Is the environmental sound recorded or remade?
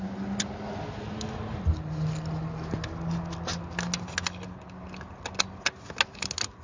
recorded